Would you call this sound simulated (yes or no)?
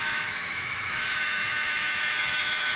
yes